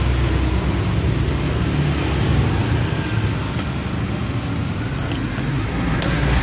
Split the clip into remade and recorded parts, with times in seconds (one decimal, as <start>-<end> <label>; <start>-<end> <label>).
0.0-5.5 recorded; 5.5-6.4 remade